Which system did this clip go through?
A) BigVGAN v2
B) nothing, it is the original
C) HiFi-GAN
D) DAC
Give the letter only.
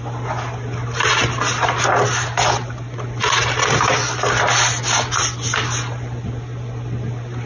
B